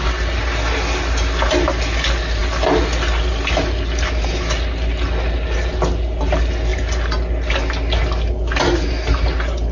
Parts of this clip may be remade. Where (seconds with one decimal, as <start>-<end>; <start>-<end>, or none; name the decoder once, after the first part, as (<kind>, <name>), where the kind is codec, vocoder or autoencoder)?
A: none